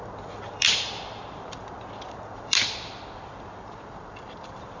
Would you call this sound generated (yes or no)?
yes